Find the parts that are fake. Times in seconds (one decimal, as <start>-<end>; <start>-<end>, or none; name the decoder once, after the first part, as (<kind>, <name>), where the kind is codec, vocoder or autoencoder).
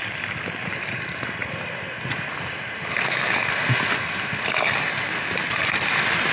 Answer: none